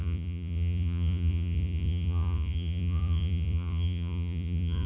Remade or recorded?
remade